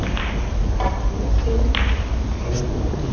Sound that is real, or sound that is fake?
real